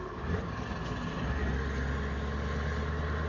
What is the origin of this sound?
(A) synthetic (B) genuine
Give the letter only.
B